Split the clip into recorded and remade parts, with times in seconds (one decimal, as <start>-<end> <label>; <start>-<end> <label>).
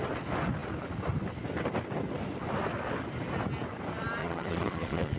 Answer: 0.0-4.2 recorded; 4.2-5.2 remade